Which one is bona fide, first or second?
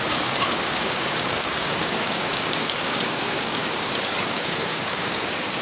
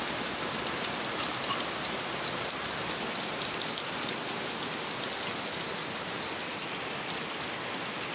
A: second